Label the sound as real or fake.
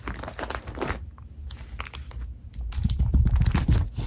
real